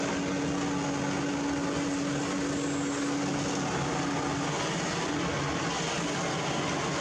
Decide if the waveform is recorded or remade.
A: recorded